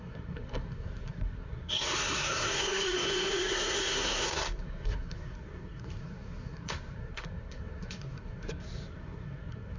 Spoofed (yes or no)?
yes